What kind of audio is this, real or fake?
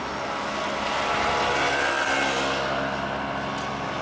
real